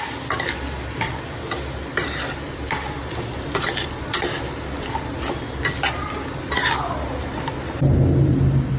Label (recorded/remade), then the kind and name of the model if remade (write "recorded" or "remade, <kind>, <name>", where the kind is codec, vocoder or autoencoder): recorded